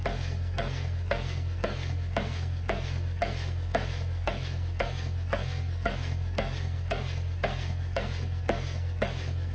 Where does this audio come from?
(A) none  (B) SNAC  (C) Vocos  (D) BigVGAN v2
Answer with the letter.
B